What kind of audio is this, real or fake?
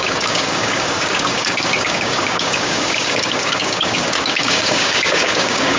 fake